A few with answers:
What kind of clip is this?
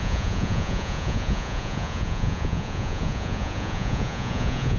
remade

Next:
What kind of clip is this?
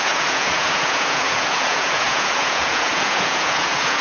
remade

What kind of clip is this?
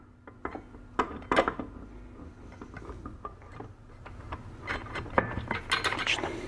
recorded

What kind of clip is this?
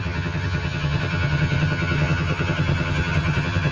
remade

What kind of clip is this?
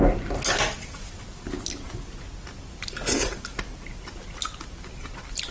recorded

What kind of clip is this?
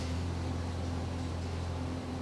remade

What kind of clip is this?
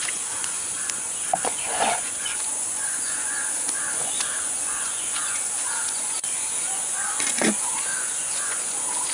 remade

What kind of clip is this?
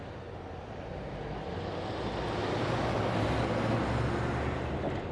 recorded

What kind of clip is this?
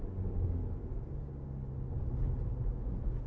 recorded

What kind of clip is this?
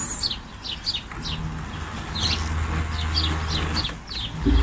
recorded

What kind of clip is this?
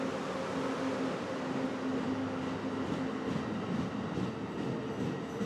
recorded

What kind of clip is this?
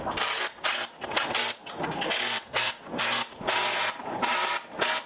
recorded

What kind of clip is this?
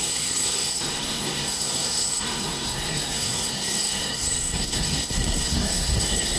remade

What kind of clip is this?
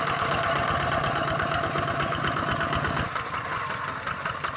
remade